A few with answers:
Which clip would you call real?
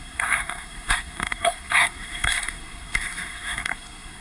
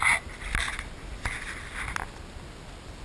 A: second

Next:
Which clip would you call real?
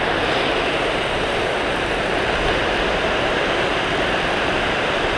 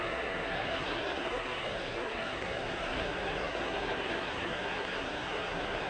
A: first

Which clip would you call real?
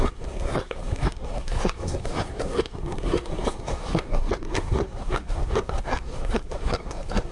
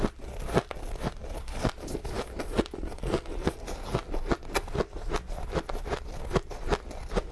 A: second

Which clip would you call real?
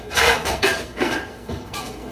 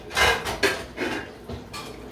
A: second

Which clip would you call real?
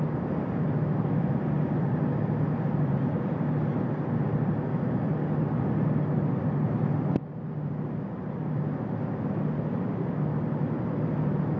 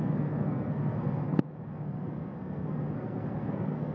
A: first